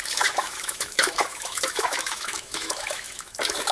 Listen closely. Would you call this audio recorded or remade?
remade